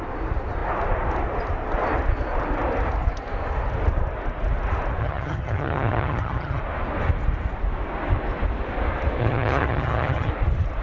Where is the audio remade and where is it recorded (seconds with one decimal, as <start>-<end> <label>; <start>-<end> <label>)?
0.0-5.0 recorded; 5.0-6.6 remade; 6.6-9.2 recorded; 9.2-10.3 remade; 10.3-10.8 recorded